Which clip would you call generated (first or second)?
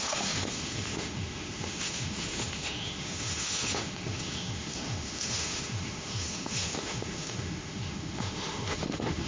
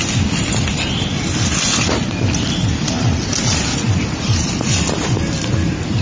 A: first